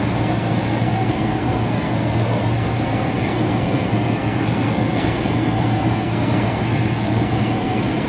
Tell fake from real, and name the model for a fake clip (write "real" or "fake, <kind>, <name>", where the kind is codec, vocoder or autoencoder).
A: fake, codec, SNAC